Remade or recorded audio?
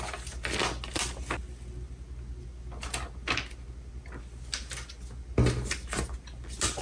recorded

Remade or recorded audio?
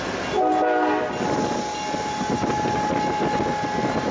recorded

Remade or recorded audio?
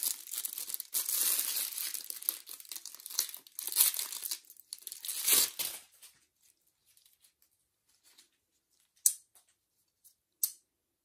recorded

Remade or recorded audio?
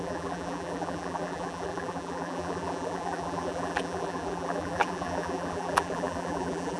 remade